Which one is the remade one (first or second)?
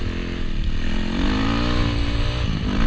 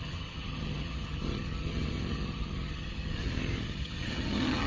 second